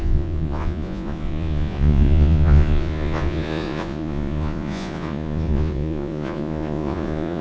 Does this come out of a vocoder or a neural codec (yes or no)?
yes